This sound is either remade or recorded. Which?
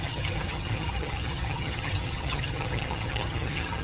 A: remade